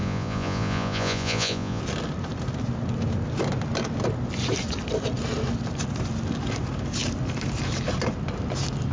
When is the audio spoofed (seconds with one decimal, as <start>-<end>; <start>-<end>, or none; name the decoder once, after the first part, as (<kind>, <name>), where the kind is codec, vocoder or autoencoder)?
0.0-1.8 (vocoder, Vocos)

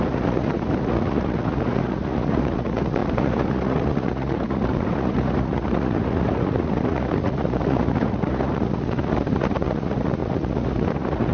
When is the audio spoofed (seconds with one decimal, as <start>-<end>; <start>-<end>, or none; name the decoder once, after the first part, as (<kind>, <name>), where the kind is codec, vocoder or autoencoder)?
0.0-11.3 (vocoder, Vocos)

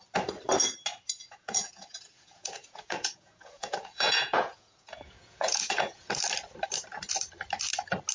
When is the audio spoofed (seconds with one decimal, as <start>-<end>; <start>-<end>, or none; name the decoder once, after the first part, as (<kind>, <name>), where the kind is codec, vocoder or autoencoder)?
1.2-6.1 (vocoder, Vocos)